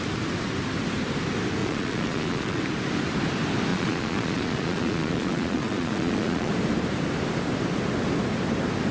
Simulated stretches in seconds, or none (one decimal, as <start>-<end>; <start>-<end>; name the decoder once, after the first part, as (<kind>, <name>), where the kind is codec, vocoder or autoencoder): 1.6-2.6 (vocoder, Vocos); 3.7-6.5